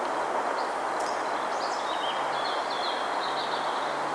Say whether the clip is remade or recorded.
recorded